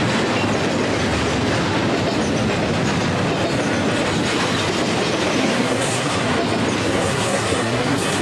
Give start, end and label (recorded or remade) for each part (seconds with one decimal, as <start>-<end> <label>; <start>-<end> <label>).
0.0-5.4 recorded; 5.4-6.3 remade; 6.3-6.8 recorded; 6.8-8.2 remade